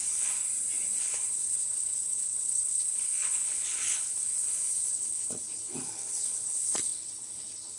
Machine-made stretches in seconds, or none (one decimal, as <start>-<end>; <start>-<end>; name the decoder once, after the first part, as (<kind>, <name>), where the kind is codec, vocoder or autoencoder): 0.0-0.5 (codec, HILCodec); 1.0-7.8